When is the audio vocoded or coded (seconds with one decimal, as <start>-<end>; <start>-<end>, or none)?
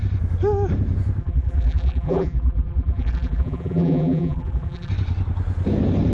1.2-4.9